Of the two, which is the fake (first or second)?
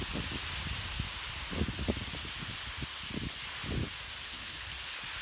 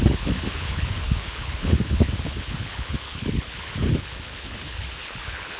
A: second